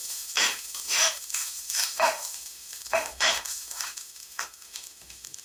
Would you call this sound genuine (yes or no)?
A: no